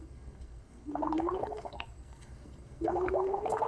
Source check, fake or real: fake